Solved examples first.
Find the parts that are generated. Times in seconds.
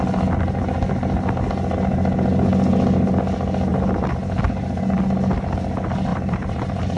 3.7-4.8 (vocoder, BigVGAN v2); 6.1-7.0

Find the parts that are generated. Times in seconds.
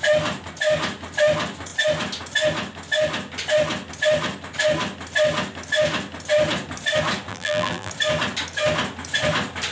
7.3-7.9 (vocoder, BigVGAN v2)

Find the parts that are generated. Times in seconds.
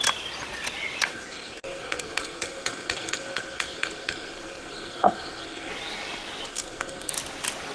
1.1-5.7 (codec, SNAC); 6.5-7.1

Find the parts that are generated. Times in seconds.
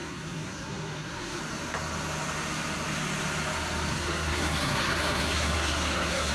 0.0-1.4 (codec, SNAC); 3.9-6.3